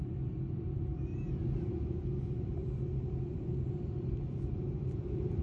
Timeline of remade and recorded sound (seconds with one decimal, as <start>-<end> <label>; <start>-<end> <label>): 0.0-1.1 remade; 1.1-2.2 recorded; 2.2-5.4 remade